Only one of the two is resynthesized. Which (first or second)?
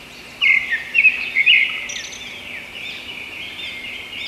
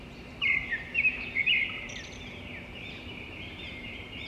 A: second